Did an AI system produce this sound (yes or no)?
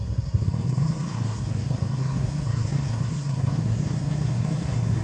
yes